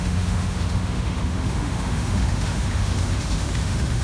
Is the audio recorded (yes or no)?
no